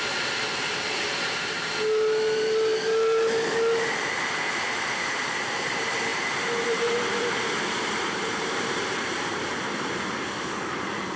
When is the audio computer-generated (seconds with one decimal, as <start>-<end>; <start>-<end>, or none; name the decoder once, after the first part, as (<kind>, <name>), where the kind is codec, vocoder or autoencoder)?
0.5-1.7 (vocoder, BigVGAN v2); 6.1-9.6